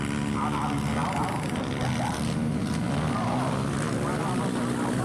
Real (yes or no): yes